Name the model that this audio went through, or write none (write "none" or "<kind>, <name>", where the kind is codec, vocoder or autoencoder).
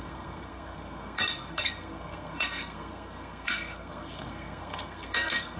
codec, SNAC